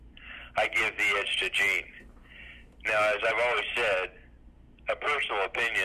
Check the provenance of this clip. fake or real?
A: real